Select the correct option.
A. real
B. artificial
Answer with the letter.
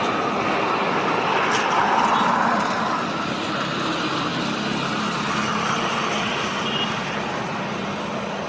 A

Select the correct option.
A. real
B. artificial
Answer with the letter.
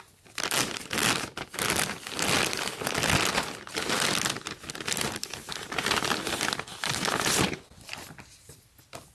A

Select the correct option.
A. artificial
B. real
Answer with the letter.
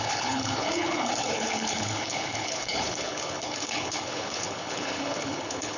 A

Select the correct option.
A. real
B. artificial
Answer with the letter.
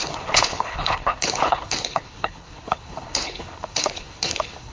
B